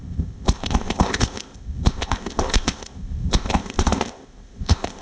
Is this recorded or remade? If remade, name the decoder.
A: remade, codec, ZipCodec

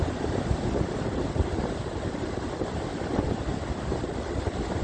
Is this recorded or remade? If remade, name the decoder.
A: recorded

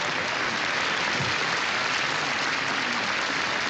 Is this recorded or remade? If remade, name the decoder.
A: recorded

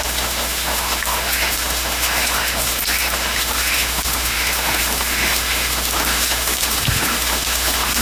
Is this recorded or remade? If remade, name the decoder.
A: remade, autoencoder, DAC-VAE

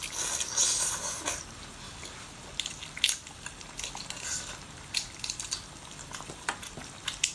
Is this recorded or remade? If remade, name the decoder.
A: recorded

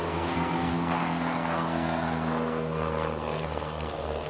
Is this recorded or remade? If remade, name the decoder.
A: remade, codec, SNAC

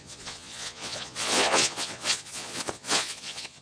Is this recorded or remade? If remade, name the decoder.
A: remade, vocoder, Vocos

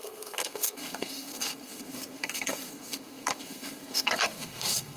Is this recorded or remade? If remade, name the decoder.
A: remade, codec, SNAC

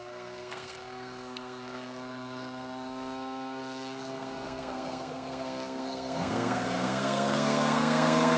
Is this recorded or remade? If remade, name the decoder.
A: remade, codec, SNAC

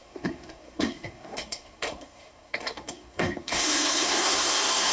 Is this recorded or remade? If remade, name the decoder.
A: remade, codec, SNAC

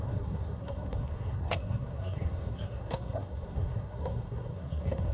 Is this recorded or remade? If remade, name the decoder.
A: remade, codec, SNAC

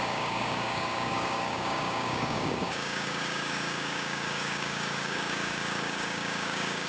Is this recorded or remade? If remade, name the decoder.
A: remade, codec, DAC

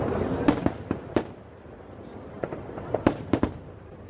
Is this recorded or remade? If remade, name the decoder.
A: remade, vocoder, BigVGAN v2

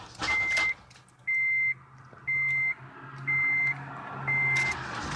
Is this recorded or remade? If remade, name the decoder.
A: recorded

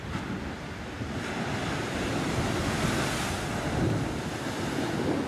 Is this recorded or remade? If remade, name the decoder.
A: recorded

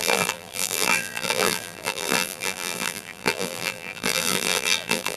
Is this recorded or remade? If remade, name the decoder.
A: remade, vocoder, BigVGAN v2